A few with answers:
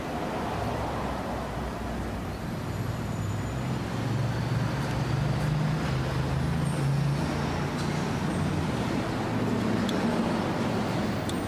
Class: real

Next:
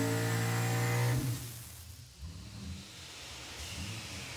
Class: real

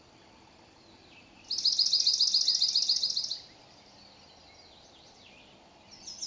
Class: real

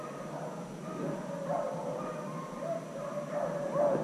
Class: real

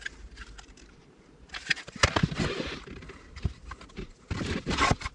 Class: fake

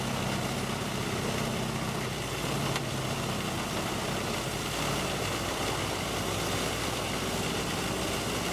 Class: fake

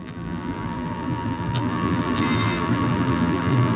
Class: fake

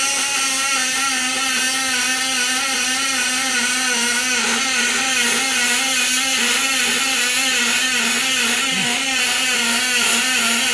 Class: real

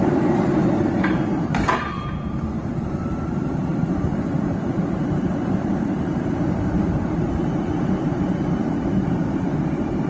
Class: fake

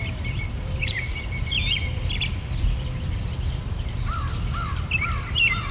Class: fake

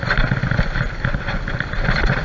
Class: fake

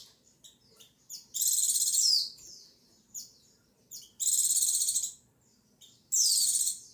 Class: fake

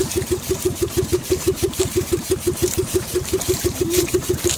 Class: fake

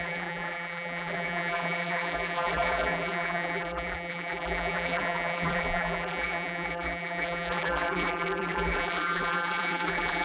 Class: fake